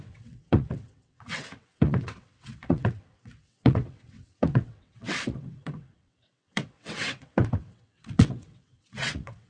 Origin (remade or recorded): remade